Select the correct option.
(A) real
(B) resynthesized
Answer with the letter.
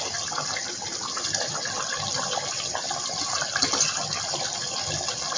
A